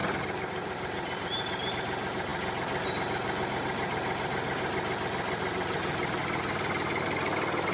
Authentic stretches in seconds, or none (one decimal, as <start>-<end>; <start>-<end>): 1.7-6.2; 7.2-7.7